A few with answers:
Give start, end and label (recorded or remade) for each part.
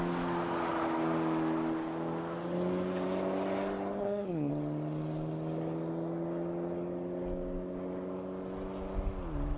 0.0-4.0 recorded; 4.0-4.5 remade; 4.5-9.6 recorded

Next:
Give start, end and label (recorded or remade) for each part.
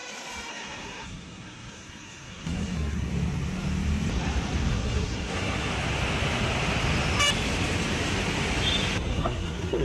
0.0-0.5 recorded; 0.5-3.1 remade; 3.1-4.7 recorded; 4.7-5.7 remade; 5.7-9.1 recorded; 9.1-9.8 remade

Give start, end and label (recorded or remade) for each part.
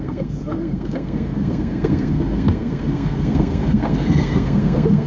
0.0-5.1 remade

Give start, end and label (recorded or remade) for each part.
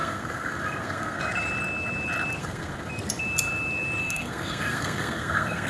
0.0-1.2 remade; 1.2-2.4 recorded; 2.4-2.9 remade; 2.9-4.0 recorded; 4.0-5.7 remade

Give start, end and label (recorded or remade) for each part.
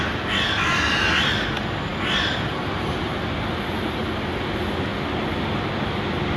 0.0-6.4 recorded